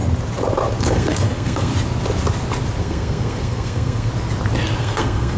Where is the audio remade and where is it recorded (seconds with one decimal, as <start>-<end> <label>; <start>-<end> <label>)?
0.0-0.8 recorded; 0.8-1.7 remade; 1.7-2.8 recorded; 2.8-4.1 remade; 4.1-4.8 recorded; 4.8-5.4 remade